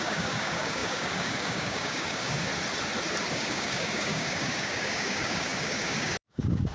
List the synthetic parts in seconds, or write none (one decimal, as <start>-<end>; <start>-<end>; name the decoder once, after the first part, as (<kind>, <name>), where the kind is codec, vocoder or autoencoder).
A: 0.0-2.5 (codec, DAC); 3.3-6.7